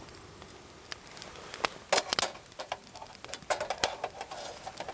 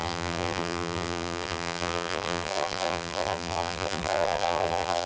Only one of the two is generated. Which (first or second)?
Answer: second